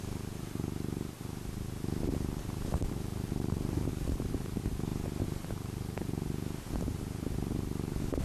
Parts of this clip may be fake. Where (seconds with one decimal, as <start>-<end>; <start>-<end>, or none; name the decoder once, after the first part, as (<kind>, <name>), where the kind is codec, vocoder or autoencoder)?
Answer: 3.1-4.2 (vocoder, BigVGAN v2)

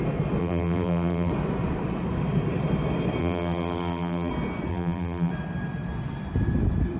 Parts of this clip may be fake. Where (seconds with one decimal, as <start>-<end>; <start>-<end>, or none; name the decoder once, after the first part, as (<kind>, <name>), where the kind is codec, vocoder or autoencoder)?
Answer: 0.4-1.3 (vocoder, BigVGAN v2); 3.2-4.3; 4.7-5.3

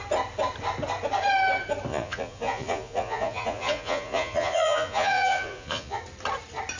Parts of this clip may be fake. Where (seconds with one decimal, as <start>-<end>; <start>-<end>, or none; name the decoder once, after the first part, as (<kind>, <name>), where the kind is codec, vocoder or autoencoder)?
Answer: 1.9-6.0 (vocoder, Vocos)

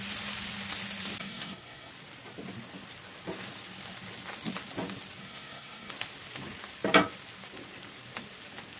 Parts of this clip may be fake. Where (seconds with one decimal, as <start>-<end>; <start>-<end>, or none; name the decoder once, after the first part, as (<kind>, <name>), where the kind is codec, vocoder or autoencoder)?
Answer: 1.2-1.9 (codec, SNAC); 5.2-5.9

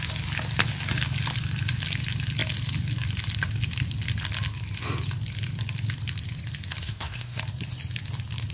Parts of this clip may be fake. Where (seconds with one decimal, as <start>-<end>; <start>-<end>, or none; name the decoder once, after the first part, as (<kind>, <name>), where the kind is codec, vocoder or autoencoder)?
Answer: 6.8-7.4 (codec, SNAC)

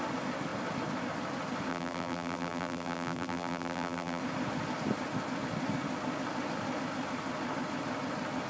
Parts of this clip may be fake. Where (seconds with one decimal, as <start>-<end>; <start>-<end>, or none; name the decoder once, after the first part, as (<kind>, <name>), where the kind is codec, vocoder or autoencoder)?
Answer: 1.7-4.2 (vocoder, BigVGAN v2)

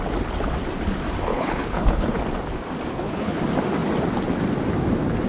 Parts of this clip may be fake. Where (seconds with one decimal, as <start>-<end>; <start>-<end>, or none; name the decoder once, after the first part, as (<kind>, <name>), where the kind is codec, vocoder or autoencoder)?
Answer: 1.3-2.2 (codec, HILCodec); 2.9-3.4

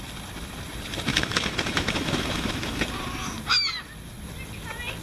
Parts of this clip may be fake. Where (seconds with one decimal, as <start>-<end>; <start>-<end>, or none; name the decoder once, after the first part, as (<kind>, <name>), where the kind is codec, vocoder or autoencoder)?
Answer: 1.1-2.8 (autoencoder, DAC-VAE)